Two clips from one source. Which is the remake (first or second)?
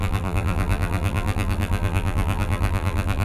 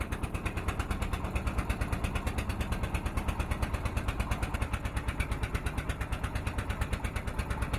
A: first